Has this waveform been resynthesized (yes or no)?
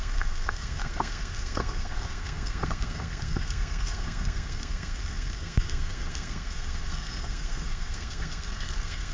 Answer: yes